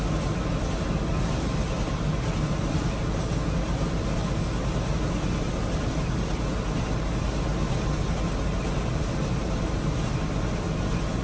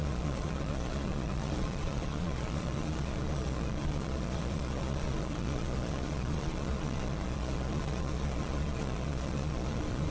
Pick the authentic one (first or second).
first